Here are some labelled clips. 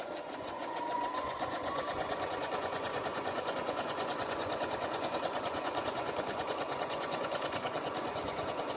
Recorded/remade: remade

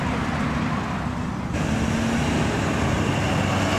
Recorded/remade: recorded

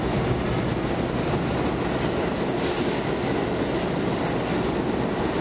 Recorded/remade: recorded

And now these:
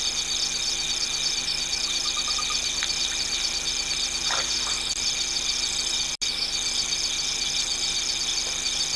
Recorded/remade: recorded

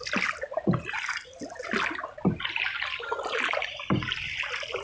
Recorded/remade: recorded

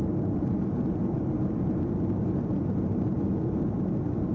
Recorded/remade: recorded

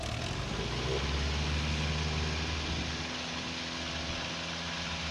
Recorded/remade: recorded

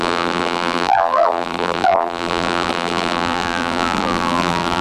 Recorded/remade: remade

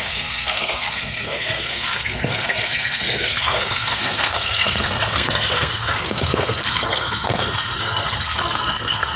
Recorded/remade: remade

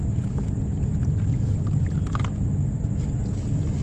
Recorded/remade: recorded